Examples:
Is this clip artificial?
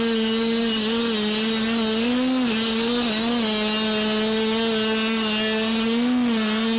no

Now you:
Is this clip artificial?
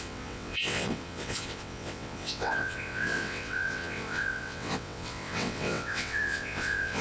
yes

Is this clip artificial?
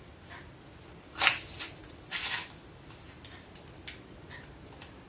no